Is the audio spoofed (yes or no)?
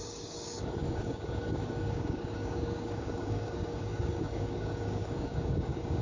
yes